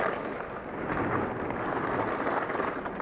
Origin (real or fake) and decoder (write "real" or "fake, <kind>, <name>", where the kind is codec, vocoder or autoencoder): real